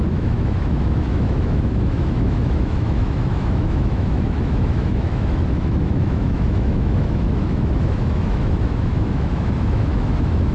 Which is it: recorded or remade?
remade